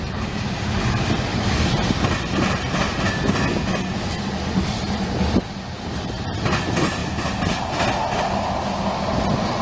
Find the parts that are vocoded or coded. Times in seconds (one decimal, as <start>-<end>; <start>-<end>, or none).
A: 1.3-3.1